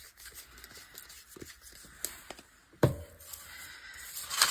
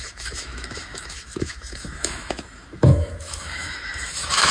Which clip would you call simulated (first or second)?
second